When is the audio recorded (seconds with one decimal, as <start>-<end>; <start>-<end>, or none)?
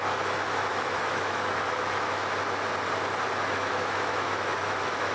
2.2-3.4